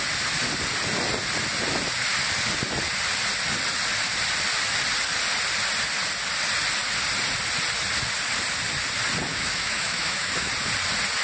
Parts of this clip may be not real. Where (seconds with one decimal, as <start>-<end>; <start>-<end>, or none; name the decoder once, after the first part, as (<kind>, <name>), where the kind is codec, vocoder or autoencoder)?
9.3-10.5 (autoencoder, DAC-VAE)